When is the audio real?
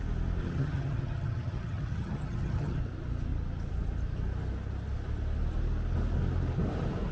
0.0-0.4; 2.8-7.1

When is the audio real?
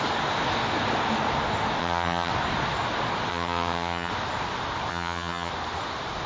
0.0-1.8; 2.3-3.3; 4.1-4.9; 5.5-6.3